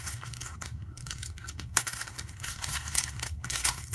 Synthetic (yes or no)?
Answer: yes